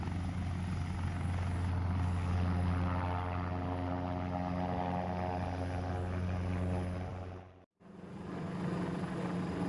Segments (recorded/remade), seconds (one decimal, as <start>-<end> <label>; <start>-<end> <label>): 0.0-9.7 recorded